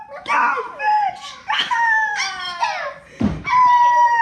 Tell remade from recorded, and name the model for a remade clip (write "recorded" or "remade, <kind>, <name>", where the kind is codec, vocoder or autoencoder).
recorded